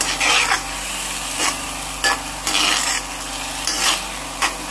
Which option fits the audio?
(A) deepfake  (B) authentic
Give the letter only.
B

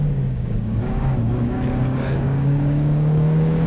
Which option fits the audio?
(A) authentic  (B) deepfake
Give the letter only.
B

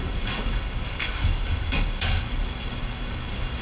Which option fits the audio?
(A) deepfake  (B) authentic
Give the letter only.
A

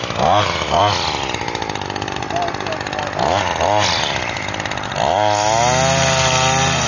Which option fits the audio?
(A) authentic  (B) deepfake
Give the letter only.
A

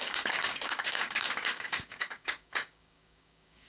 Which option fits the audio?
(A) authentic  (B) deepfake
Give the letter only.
B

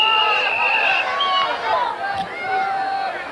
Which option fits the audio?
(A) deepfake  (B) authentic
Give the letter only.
B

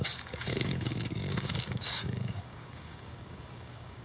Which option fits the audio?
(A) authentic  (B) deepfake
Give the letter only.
B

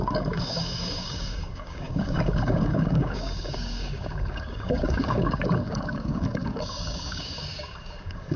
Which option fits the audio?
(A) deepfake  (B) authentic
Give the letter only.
A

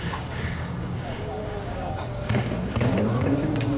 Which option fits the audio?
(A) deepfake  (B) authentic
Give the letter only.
A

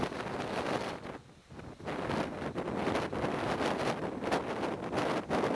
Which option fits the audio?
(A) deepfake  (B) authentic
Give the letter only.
B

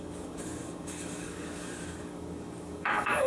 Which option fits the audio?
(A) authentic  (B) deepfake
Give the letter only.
B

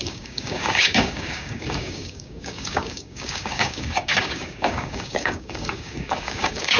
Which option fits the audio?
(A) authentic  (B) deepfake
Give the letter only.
B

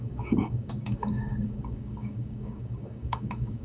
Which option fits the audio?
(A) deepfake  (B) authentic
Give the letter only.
A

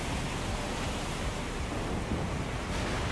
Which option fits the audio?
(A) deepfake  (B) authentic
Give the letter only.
B